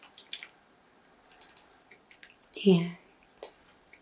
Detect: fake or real real